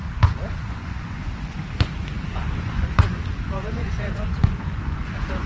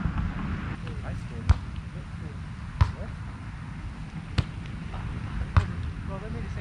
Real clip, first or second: second